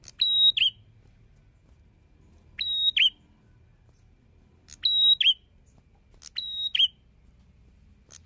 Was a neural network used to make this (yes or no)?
no